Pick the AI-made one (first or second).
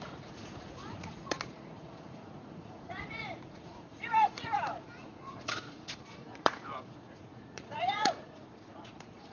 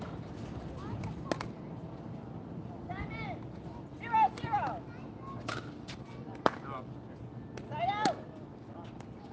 first